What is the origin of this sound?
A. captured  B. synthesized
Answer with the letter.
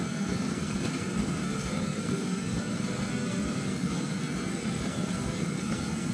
B